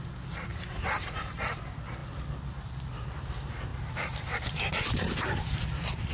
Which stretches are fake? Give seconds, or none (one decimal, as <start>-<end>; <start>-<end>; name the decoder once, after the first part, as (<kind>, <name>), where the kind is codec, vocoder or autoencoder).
0.5-1.5 (vocoder, BigVGAN v2)